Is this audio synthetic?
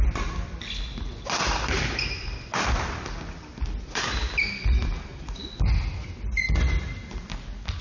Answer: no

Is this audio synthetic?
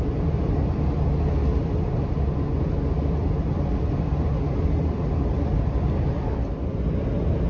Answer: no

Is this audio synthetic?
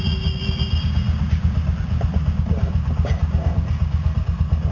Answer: no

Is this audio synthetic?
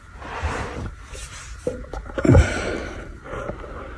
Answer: no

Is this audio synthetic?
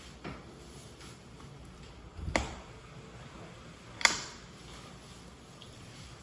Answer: no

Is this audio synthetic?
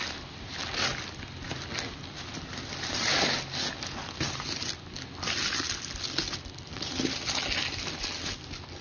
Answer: no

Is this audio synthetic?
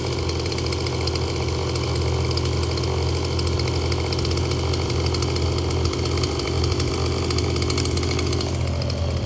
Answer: no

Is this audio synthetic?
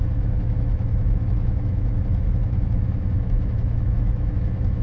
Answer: yes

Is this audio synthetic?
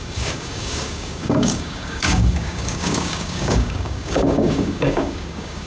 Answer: yes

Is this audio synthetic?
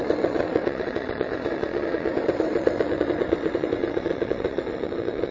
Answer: yes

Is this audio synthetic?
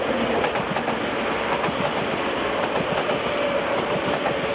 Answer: no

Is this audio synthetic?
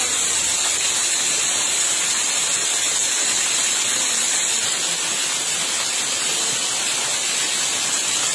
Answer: no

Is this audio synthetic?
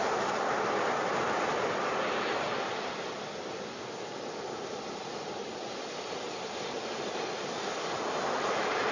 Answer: yes